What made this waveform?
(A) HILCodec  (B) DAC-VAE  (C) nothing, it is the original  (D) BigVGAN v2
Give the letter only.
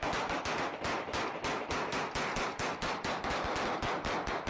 C